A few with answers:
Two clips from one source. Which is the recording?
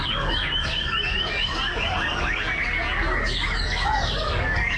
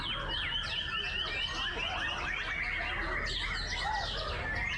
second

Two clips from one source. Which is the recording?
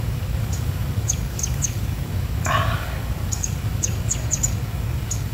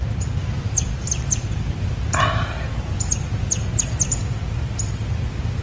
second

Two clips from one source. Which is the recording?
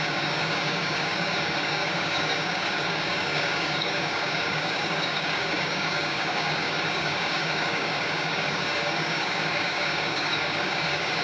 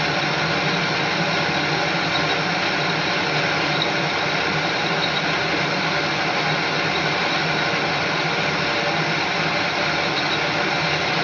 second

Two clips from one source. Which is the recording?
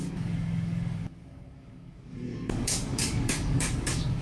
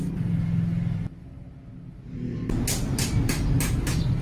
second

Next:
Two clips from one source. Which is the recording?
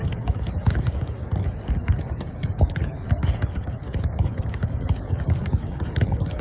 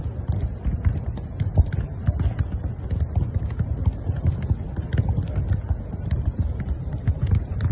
second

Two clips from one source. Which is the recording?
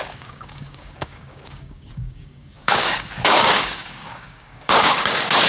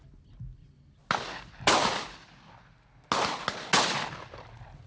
second